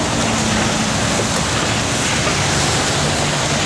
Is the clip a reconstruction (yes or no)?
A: no